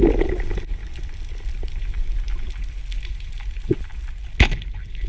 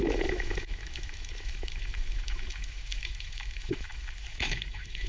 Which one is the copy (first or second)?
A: second